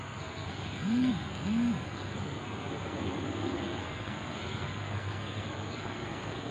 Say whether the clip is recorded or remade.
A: remade